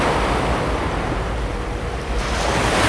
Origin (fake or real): real